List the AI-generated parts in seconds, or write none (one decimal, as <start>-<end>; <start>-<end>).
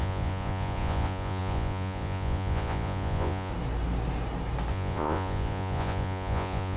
0.0-3.5; 4.7-6.8